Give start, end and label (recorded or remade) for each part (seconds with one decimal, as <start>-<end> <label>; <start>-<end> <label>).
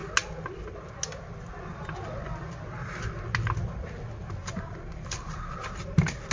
0.0-4.4 recorded; 4.4-5.5 remade; 5.5-6.3 recorded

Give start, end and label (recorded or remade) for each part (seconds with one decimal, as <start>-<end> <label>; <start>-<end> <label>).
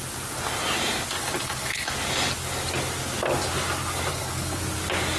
0.0-1.2 recorded; 1.2-1.9 remade; 1.9-4.1 recorded; 4.1-4.6 remade; 4.6-5.2 recorded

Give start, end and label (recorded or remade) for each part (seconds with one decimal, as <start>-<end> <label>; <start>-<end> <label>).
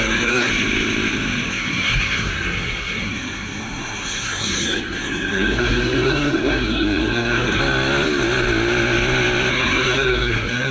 0.0-0.5 remade; 0.5-1.5 recorded; 1.5-7.6 remade; 7.6-9.5 recorded; 9.5-10.7 remade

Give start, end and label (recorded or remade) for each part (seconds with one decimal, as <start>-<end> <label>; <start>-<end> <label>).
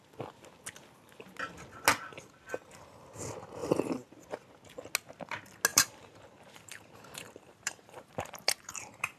0.0-5.7 recorded; 5.7-9.2 remade